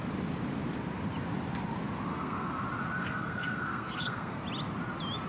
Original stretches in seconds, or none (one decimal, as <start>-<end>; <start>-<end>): 0.0-2.1; 2.6-3.0; 4.4-5.3